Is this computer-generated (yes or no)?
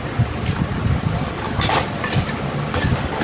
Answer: no